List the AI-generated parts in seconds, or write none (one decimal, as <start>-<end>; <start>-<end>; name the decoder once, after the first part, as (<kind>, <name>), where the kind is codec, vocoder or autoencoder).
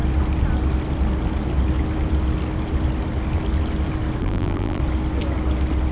4.2-4.8 (vocoder, BigVGAN v2)